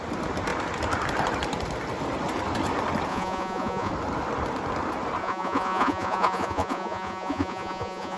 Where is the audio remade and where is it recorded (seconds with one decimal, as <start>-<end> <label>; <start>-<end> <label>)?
0.0-3.1 recorded; 3.1-3.9 remade; 3.9-5.2 recorded; 5.2-8.2 remade